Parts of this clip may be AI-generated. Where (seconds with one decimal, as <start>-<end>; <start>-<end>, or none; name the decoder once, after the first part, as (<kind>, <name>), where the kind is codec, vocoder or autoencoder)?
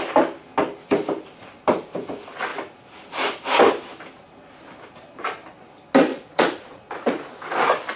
6.1-7.3 (vocoder, Vocos)